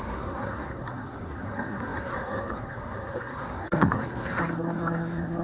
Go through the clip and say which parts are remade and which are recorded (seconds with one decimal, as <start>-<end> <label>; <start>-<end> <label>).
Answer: 0.0-5.4 remade